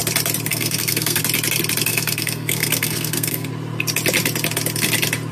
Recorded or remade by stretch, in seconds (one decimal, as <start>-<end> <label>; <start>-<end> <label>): 0.0-0.5 recorded; 0.5-1.2 remade; 1.2-1.9 recorded; 1.9-3.5 remade; 3.5-5.3 recorded